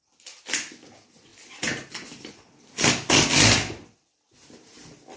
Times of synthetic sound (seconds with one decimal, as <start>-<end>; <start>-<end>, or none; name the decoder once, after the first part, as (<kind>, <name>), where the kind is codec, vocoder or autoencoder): none